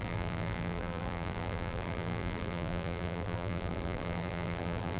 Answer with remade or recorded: remade